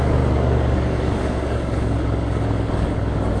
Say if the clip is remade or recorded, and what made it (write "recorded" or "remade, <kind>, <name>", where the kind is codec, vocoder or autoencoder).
remade, codec, DAC